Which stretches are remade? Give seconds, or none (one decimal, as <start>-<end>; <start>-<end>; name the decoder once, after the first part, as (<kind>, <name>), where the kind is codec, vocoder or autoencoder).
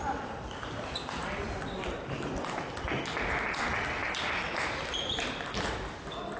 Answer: none